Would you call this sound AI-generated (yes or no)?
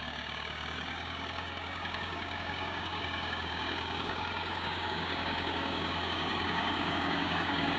yes